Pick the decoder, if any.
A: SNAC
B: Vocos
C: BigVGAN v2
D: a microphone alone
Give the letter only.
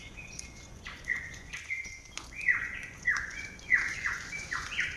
B